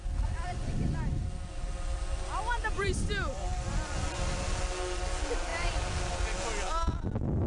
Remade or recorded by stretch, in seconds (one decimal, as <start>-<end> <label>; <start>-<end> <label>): 0.0-2.6 recorded; 2.6-4.4 remade; 4.4-5.5 recorded; 5.5-6.0 remade; 6.0-7.5 recorded